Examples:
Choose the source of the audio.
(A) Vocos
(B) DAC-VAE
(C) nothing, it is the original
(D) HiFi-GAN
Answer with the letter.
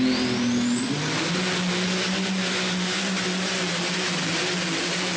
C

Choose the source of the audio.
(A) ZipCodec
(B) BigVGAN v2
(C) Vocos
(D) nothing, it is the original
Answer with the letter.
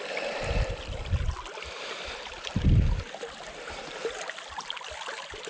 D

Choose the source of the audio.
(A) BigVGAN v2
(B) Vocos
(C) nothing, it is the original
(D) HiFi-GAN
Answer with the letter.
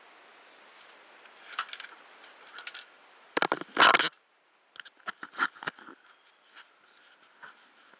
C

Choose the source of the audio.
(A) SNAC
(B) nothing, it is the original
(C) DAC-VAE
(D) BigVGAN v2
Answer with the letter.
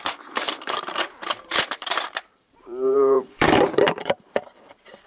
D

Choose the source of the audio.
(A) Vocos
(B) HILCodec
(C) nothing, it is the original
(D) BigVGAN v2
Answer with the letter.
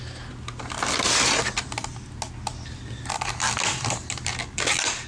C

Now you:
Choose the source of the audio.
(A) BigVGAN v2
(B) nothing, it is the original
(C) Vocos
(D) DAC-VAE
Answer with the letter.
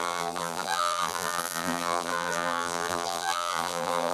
A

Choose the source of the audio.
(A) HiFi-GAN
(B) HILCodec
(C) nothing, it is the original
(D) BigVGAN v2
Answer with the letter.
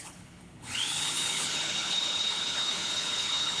B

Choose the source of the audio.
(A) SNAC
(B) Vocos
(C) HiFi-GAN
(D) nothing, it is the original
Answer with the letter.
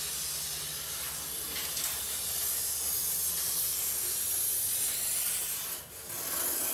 D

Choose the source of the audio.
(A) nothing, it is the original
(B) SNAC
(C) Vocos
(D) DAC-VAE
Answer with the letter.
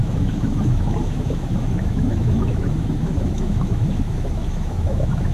D